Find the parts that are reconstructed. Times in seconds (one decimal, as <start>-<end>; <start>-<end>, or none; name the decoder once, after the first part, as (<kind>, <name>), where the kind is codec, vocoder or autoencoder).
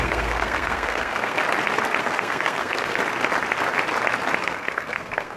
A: 0.0-1.4 (codec, SNAC); 2.0-3.0; 4.4-5.4